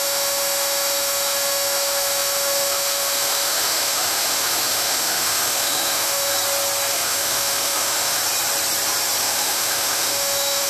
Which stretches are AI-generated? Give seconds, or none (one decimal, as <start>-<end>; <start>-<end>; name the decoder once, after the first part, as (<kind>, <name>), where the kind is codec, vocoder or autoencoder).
0.0-6.3 (autoencoder, DAC-VAE); 6.9-8.2; 9.2-10.7